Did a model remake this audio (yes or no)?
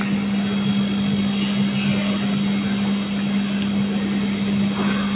no